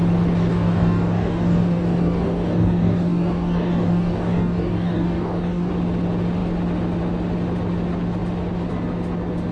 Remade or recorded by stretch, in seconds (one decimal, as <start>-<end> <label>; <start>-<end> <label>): 0.0-0.5 recorded; 0.5-5.7 remade; 5.7-9.5 recorded